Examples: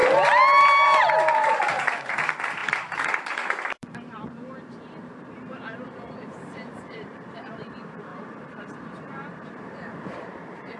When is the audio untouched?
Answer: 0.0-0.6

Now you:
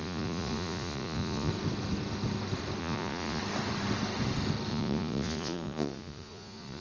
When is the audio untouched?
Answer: 1.5-2.8; 3.4-4.7

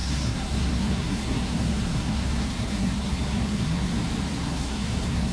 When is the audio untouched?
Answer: 3.9-4.4

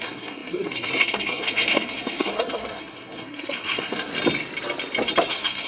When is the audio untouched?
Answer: 4.1-5.3